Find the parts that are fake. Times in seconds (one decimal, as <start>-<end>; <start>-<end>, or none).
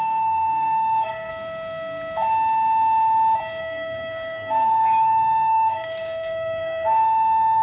0.0-1.3; 3.6-7.6